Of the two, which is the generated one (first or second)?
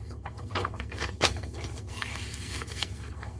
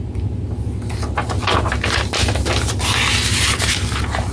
first